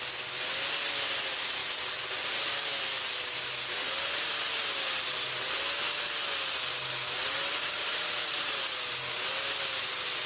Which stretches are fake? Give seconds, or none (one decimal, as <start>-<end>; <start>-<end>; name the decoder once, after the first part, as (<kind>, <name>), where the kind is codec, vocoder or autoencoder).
7.8-8.5 (vocoder, Vocos)